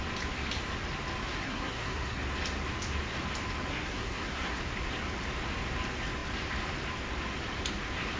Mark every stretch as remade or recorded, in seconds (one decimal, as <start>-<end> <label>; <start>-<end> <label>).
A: 0.0-1.3 recorded; 1.3-2.2 remade; 2.2-3.7 recorded; 3.7-4.6 remade; 4.6-8.2 recorded